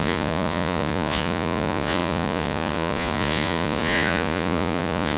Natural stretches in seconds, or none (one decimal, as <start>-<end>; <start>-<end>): none